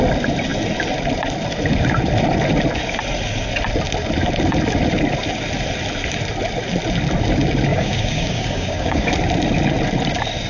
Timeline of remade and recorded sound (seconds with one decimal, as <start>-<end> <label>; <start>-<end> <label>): 0.0-7.7 recorded; 7.7-9.1 remade; 9.1-10.5 recorded